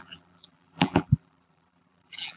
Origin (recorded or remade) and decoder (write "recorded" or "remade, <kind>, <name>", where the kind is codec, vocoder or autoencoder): remade, vocoder, BigVGAN v2